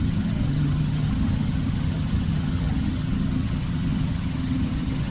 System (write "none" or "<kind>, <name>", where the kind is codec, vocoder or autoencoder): vocoder, HiFi-GAN